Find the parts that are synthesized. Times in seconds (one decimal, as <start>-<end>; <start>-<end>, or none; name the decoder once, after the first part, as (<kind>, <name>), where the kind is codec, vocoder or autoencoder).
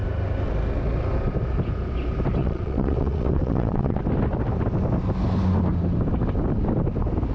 2.4-4.0 (vocoder, WaveNeXt)